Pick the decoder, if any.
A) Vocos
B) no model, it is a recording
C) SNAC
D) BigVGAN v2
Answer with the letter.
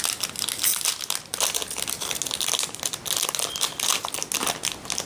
B